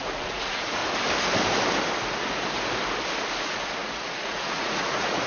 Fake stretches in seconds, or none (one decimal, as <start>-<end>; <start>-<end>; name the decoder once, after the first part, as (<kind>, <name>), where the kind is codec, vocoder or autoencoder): 0.0-0.8 (vocoder, Vocos); 3.4-5.3

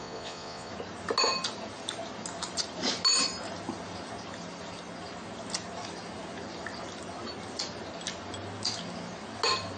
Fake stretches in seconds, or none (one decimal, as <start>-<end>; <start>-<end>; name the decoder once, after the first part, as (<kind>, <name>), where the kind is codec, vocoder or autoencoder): 0.0-0.7 (vocoder, Vocos)

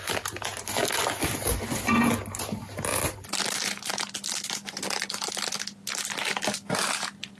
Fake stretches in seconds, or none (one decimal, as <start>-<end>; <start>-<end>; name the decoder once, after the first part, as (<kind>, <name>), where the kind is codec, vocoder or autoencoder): none

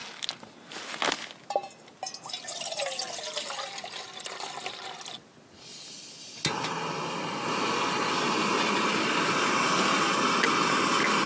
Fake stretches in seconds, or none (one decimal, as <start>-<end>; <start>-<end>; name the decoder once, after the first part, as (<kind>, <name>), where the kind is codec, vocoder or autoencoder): none

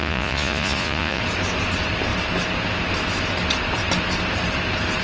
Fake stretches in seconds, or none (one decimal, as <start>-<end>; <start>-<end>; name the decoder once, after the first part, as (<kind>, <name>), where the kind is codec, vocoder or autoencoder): 0.0-1.2 (vocoder, Vocos)